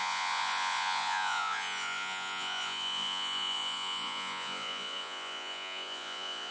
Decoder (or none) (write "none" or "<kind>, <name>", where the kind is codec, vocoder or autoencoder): vocoder, Vocos